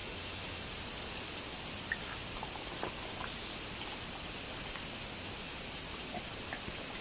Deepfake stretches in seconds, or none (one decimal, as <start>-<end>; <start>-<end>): none